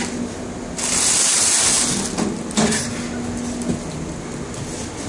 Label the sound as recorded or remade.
recorded